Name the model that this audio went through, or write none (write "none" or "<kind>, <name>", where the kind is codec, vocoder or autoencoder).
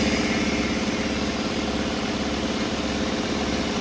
none